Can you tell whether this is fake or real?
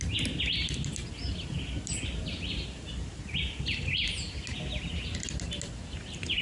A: real